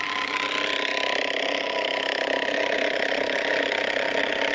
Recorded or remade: recorded